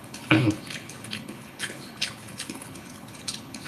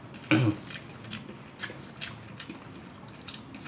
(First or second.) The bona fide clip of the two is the second